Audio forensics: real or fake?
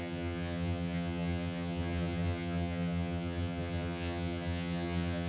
fake